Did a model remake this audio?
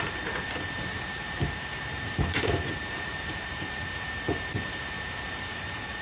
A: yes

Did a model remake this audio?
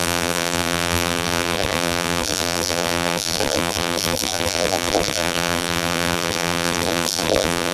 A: yes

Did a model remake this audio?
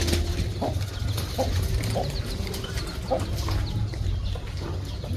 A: no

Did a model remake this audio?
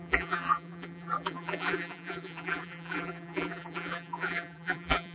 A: yes